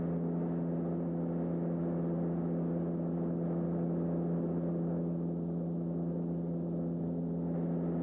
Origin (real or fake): real